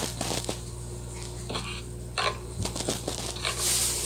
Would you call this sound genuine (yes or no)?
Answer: yes